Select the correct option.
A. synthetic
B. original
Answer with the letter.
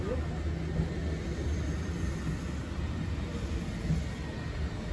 B